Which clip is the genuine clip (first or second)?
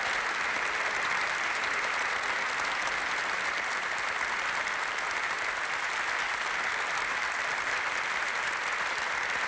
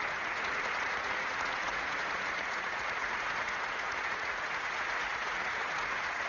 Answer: first